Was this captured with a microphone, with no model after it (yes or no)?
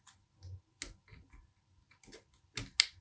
yes